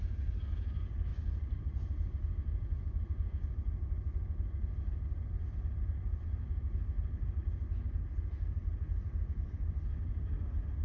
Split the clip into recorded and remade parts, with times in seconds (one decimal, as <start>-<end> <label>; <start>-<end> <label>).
0.0-7.4 remade; 7.4-8.1 recorded; 8.1-10.8 remade